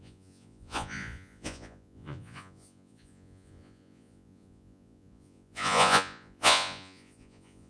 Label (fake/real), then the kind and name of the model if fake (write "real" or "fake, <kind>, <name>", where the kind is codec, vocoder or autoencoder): fake, vocoder, Vocos